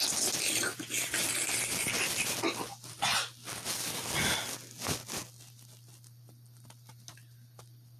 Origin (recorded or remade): recorded